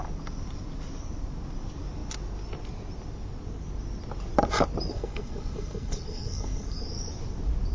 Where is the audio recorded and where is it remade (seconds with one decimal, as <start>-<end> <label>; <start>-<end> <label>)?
0.0-4.9 recorded; 4.9-6.8 remade; 6.8-7.7 recorded